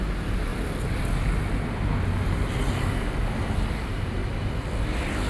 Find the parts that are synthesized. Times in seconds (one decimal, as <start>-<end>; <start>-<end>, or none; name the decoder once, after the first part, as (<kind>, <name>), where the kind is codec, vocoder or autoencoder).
0.0-0.5 (vocoder, BigVGAN v2); 3.7-4.2